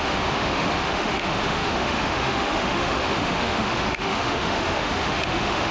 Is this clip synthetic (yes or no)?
yes